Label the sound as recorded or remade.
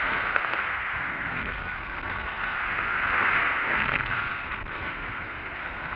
remade